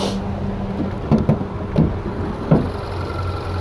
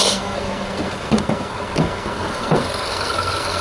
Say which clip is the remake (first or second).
second